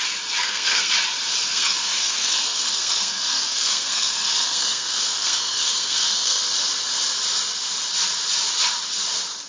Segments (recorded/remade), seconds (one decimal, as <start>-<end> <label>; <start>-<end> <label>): 0.0-0.4 recorded; 0.4-0.9 remade; 0.9-1.5 recorded; 1.5-6.4 remade; 6.4-9.5 recorded